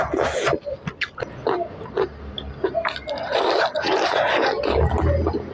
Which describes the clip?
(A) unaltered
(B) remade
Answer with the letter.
A